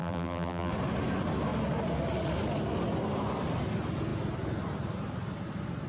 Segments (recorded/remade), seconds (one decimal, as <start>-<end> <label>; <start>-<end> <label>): 0.0-0.7 remade; 0.7-5.9 recorded